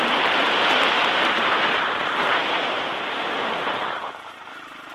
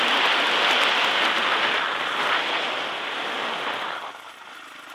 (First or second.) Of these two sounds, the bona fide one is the second